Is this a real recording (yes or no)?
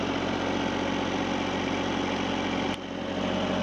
yes